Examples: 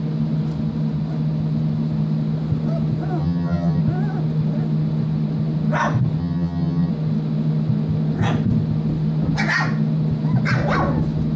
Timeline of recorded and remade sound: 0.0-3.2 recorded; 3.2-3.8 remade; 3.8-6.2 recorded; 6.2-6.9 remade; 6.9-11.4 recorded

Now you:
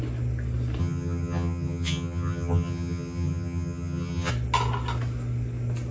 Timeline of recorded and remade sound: 0.0-0.8 recorded; 0.8-4.3 remade; 4.3-5.9 recorded

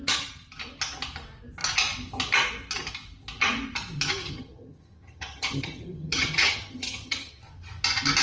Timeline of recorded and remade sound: 0.0-4.2 recorded; 4.2-7.4 remade; 7.4-8.2 recorded